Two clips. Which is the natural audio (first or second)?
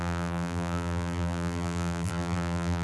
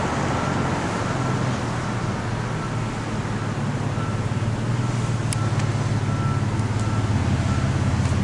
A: second